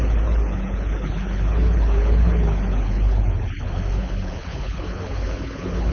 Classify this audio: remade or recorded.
remade